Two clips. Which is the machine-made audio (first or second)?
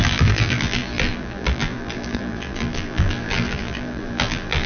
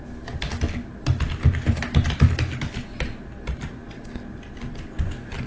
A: first